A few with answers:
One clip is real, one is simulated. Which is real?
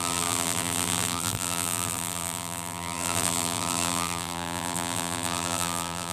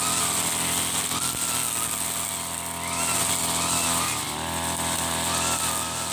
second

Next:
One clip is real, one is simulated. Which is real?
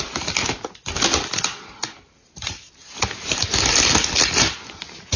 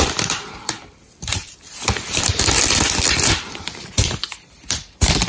first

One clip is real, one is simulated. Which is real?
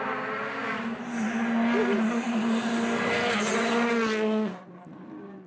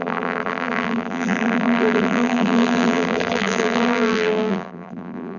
first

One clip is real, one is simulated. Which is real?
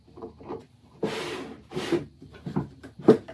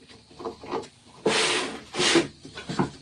second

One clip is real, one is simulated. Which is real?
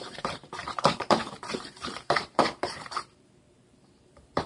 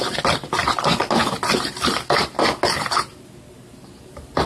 second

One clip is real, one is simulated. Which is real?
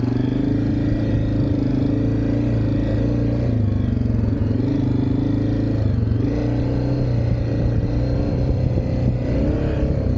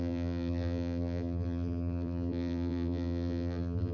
first